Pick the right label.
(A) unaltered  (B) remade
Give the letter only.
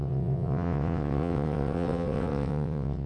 B